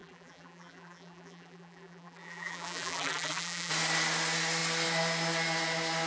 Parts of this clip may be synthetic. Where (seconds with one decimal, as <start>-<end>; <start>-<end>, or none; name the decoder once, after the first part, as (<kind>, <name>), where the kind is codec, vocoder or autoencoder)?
0.0-3.7 (vocoder, BigVGAN v2)